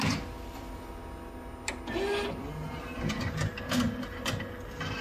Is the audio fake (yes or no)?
no